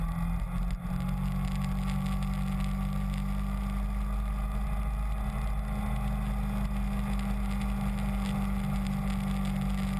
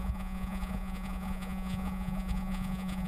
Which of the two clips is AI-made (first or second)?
second